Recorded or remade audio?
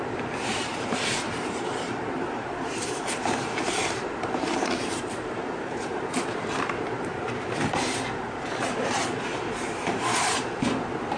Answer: remade